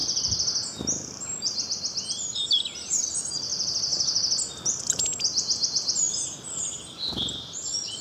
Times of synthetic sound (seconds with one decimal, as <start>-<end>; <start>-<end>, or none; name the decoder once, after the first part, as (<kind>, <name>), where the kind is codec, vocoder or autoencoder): 0.0-8.0 (vocoder, BigVGAN v2)